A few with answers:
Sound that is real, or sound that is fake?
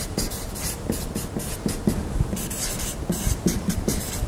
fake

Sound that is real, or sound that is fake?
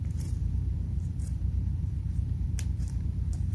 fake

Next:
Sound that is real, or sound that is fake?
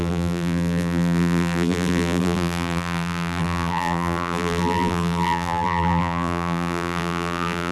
fake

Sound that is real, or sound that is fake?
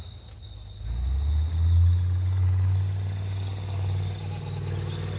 real